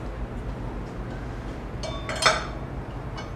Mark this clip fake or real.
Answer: real